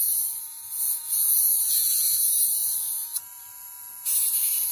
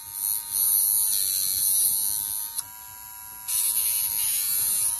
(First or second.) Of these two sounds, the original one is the second